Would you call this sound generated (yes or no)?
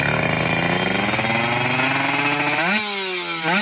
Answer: no